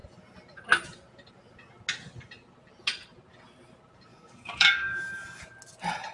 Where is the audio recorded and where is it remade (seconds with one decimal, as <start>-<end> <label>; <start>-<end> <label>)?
0.0-4.1 recorded; 4.1-5.4 remade; 5.4-6.1 recorded